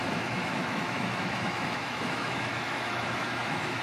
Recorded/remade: remade